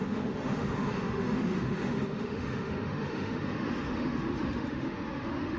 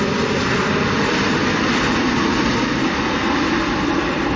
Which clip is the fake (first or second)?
first